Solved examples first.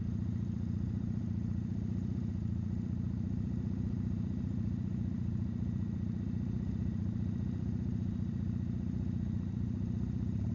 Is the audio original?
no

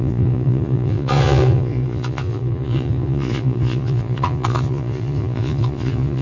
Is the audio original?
no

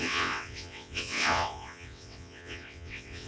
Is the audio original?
no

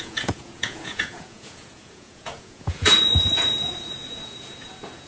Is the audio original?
no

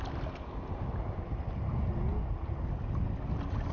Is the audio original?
yes